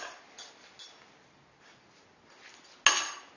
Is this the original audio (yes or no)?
yes